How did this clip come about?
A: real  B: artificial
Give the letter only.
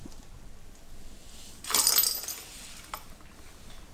A